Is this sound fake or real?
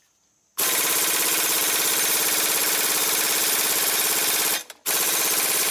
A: real